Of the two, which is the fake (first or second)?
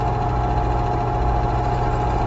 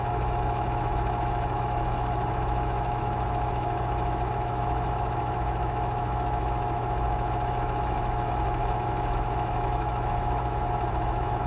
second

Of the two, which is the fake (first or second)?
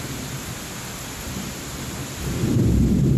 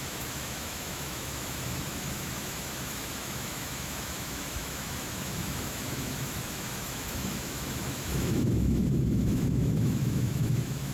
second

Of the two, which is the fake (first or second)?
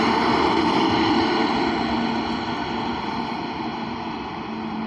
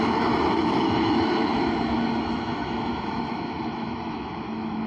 second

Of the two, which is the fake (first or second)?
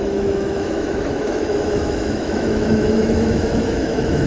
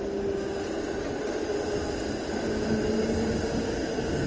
first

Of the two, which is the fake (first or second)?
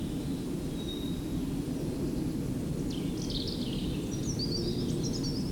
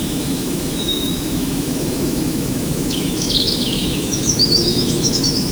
second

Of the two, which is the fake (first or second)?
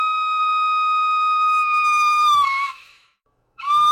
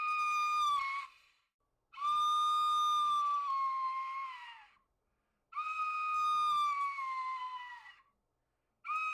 first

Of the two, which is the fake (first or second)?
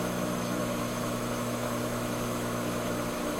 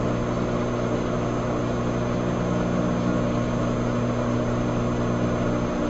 first